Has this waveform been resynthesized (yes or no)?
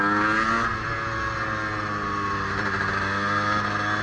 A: no